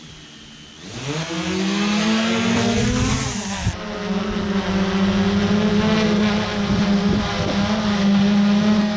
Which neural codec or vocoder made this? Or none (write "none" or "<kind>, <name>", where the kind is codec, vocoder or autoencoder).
none